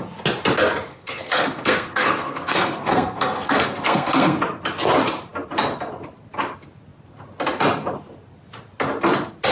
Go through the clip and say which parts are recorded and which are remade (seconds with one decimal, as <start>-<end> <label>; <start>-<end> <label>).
0.0-0.9 recorded; 0.9-4.4 remade; 4.4-9.5 recorded